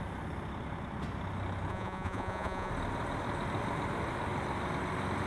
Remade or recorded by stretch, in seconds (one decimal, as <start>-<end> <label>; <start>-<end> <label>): 0.0-1.7 recorded; 1.7-2.7 remade; 2.7-5.3 recorded